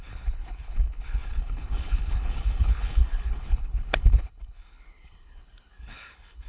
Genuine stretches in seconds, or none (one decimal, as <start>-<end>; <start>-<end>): none